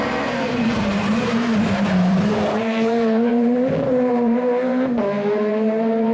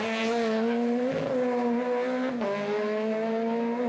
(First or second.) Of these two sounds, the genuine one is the second